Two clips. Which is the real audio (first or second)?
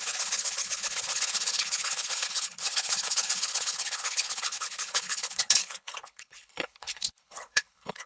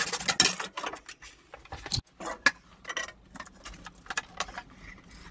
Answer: second